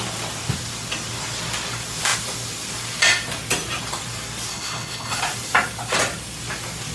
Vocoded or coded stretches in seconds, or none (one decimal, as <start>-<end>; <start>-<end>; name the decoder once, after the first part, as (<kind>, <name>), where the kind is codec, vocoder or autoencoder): 4.5-5.2 (codec, HILCodec)